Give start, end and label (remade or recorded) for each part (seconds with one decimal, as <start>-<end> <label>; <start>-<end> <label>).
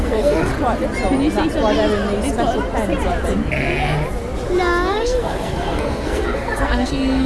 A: 0.0-0.5 remade; 0.5-4.9 recorded; 4.9-7.3 remade